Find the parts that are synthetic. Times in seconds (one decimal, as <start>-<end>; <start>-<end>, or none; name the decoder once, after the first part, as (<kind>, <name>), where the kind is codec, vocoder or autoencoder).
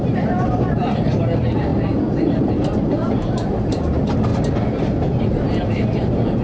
0.0-4.3 (vocoder, BigVGAN v2); 5.2-6.4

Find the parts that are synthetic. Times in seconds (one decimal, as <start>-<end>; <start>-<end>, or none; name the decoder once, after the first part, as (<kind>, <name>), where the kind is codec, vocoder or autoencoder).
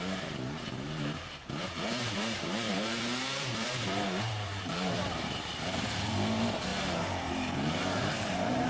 0.0-8.7 (vocoder, BigVGAN v2)